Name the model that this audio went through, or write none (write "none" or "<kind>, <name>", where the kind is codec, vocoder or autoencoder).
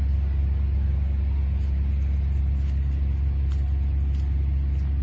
none